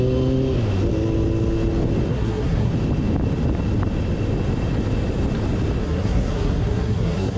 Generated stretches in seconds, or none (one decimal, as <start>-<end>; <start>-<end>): 2.1-2.7; 5.8-7.4